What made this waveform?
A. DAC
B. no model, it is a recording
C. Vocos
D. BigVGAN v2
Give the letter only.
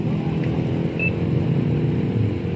D